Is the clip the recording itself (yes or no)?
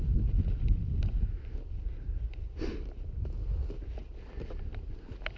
yes